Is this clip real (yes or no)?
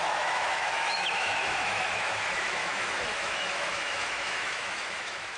no